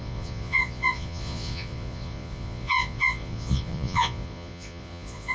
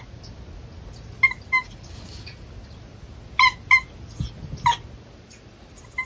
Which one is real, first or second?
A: second